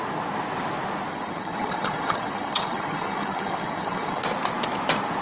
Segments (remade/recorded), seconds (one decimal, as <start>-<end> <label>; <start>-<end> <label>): 0.0-1.1 recorded; 1.1-4.2 remade; 4.2-5.2 recorded